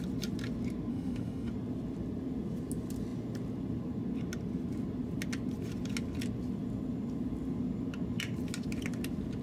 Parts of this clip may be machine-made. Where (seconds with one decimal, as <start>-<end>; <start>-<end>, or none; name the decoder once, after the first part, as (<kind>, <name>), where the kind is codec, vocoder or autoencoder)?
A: 0.9-1.5 (autoencoder, DAC-VAE)

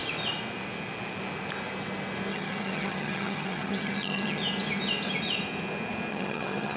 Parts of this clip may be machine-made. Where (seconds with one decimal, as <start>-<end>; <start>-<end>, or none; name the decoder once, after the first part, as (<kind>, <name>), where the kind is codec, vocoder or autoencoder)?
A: 2.3-4.4 (vocoder, HiFi-GAN); 6.1-6.8

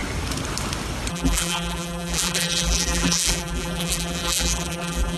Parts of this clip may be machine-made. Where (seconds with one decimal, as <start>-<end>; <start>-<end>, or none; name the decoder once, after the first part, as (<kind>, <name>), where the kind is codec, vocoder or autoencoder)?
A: 1.1-5.2 (vocoder, BigVGAN v2)

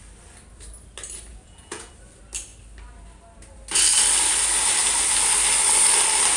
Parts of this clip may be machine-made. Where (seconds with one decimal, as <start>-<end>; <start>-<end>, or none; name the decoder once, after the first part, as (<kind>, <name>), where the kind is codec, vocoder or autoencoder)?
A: 1.3-1.9 (vocoder, Vocos)